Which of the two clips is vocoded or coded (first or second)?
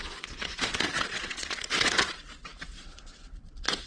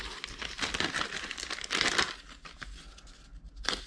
first